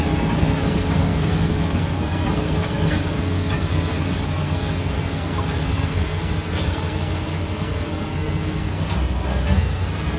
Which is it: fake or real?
fake